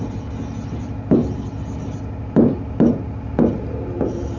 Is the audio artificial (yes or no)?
no